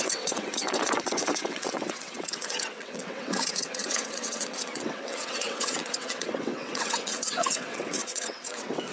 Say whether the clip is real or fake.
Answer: fake